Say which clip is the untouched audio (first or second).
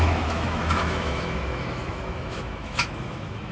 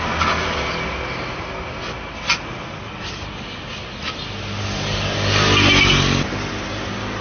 second